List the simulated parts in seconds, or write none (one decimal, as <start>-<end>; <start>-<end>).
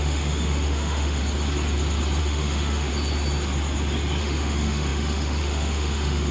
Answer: 0.0-1.2; 2.2-2.9; 4.2-6.3